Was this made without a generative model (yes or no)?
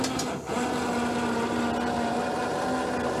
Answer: yes